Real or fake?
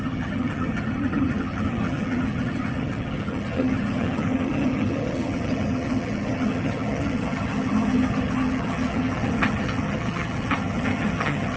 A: fake